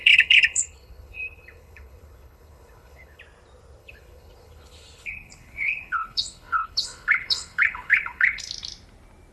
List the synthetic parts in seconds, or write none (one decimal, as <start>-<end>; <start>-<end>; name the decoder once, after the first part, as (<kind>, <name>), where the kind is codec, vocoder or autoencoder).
0.0-3.2 (codec, HILCodec); 3.8-8.5